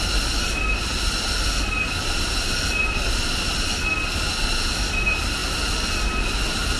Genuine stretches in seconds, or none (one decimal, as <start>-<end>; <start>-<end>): 0.0-6.8